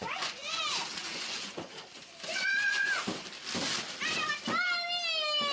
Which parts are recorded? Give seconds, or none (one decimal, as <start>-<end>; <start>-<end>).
0.6-1.0; 3.0-5.5